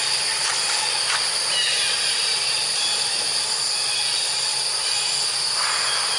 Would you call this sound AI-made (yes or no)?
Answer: no